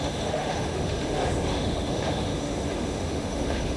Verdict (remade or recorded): remade